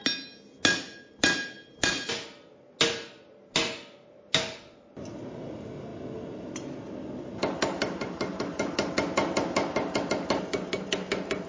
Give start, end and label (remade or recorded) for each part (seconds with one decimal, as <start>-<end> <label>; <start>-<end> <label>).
0.0-11.5 recorded